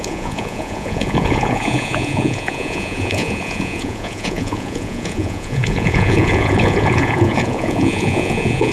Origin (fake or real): fake